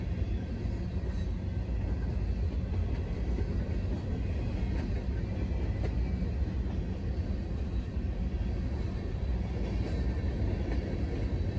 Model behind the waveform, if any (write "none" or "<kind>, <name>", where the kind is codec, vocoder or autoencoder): none